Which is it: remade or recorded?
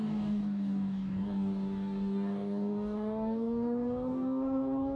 remade